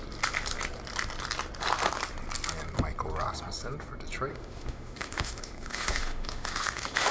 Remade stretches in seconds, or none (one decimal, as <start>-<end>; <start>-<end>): 4.3-7.1